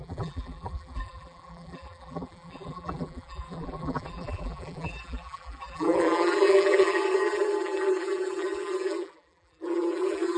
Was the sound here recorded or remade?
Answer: remade